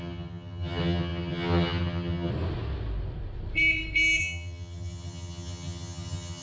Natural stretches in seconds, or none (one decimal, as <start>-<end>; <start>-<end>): 2.3-4.2